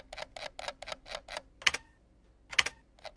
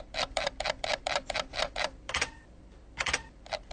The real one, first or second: first